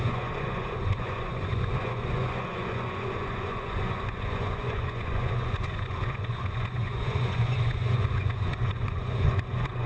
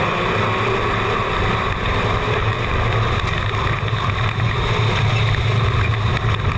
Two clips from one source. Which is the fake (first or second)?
first